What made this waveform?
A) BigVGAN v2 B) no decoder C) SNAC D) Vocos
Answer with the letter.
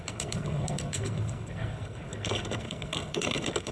C